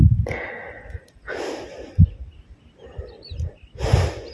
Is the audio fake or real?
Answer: real